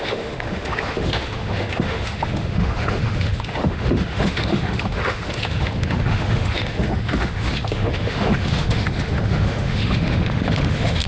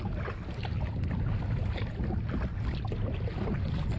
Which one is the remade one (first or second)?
first